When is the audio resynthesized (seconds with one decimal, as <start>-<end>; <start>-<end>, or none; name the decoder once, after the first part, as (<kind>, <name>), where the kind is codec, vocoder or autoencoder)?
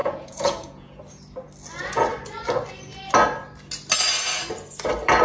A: 0.0-1.0 (vocoder, Vocos)